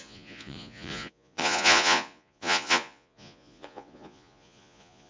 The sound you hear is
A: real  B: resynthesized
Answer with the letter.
B